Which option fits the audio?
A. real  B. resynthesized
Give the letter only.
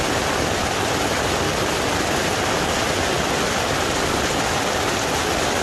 A